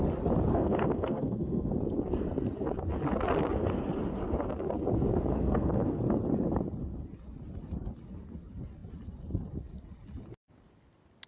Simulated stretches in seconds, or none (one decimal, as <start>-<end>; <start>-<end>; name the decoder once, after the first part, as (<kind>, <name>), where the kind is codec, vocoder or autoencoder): 0.5-1.7 (codec, SNAC); 5.3-6.0

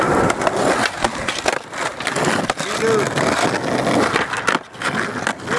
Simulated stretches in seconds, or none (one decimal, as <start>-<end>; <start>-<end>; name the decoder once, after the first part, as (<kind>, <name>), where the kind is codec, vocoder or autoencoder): none

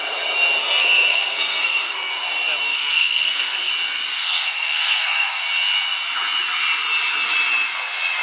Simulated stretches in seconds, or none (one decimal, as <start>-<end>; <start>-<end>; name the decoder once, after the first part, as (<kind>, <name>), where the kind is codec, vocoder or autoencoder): 0.6-2.1 (codec, SNAC); 2.7-3.7; 4.2-5.4

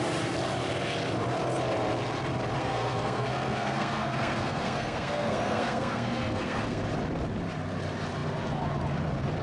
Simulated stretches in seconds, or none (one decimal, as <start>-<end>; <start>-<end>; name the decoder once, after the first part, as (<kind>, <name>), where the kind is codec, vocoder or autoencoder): 2.6-6.8 (codec, SNAC)

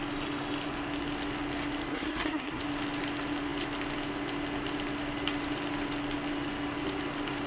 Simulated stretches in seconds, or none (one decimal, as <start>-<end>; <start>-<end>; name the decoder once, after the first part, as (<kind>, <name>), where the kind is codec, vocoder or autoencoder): 1.9-2.6 (codec, SNAC)